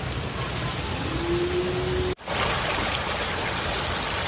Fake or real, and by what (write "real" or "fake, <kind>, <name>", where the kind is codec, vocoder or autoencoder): real